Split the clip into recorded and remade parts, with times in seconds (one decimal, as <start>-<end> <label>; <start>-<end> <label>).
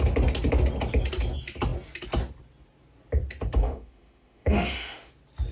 0.0-3.6 recorded; 3.6-5.1 remade; 5.1-5.5 recorded